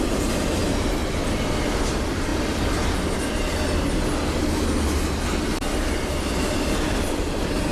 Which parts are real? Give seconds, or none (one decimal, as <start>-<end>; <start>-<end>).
0.6-1.6; 2.3-5.6